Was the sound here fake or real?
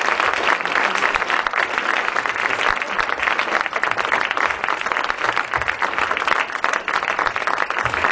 real